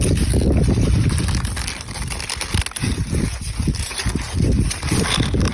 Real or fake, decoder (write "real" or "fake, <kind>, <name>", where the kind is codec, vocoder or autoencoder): real